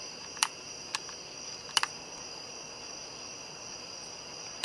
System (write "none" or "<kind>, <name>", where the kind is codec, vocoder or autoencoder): vocoder, BigVGAN v2